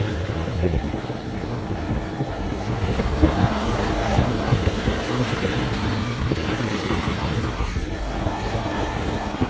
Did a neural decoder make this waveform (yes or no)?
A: yes